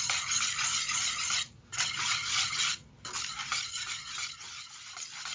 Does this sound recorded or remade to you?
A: recorded